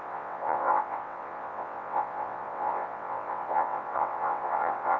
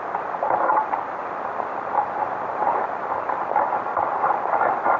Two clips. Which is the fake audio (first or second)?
first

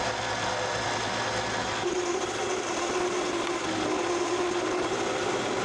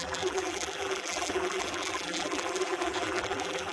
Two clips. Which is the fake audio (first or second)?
second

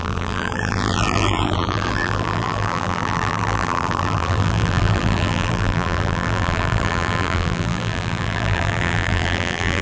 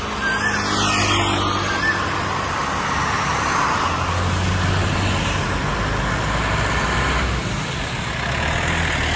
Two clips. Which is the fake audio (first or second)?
first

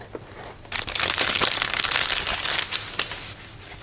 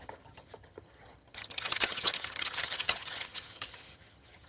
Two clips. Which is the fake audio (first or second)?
second